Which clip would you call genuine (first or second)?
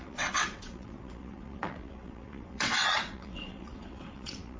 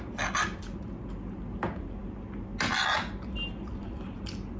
second